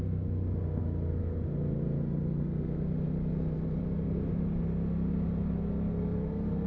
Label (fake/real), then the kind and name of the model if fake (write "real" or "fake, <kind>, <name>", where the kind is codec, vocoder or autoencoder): real